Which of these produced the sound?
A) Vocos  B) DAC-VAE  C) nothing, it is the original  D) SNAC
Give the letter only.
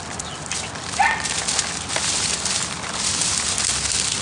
C